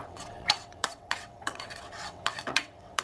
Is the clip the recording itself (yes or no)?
no